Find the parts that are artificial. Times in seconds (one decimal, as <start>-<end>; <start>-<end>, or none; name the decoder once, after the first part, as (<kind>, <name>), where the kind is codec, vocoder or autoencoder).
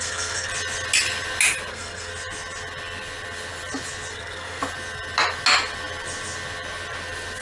0.0-0.5 (codec, SNAC); 1.7-2.1; 4.1-4.6